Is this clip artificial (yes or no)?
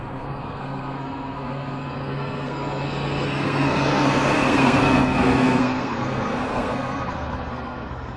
yes